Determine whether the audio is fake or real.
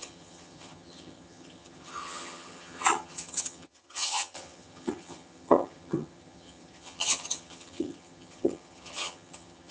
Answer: fake